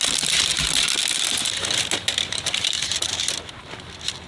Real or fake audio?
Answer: real